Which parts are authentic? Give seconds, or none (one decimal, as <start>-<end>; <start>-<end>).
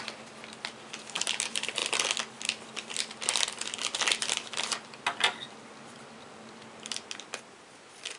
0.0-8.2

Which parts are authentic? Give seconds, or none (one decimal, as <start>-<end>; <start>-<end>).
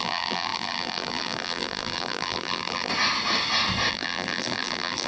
2.9-3.9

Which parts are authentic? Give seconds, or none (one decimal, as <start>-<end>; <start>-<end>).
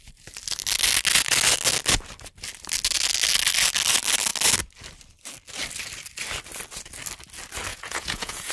0.0-7.7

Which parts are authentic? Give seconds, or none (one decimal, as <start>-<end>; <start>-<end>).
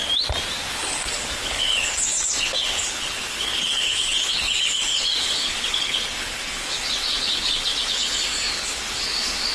0.0-0.7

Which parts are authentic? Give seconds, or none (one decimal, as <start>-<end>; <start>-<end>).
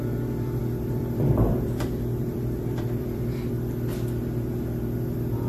0.0-0.6; 3.5-5.5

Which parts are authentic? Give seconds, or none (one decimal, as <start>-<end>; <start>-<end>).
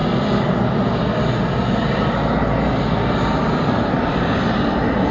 0.0-5.1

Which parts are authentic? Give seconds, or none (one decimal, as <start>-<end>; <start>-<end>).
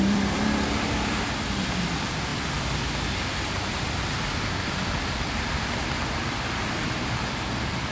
2.3-3.5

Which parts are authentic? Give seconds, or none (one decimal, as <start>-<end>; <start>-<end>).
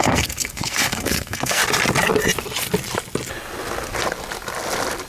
1.6-5.1